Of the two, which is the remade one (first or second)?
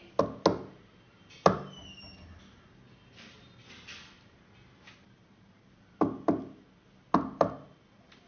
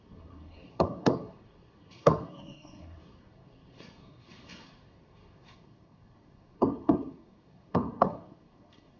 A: second